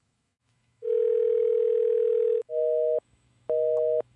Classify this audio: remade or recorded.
remade